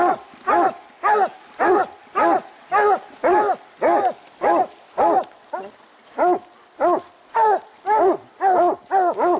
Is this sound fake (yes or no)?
no